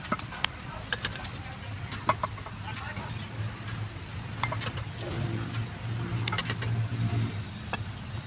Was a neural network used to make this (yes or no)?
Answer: no